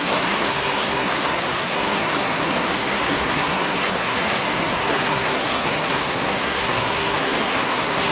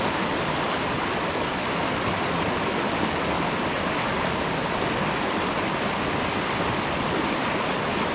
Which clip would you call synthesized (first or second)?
first